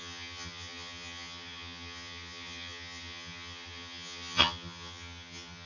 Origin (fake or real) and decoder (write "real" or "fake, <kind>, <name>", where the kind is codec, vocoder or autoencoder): fake, vocoder, HiFi-GAN